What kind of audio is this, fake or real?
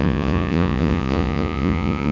fake